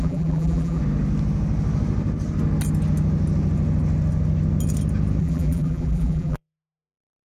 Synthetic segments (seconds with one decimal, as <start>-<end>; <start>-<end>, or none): 0.0-0.8; 5.2-7.3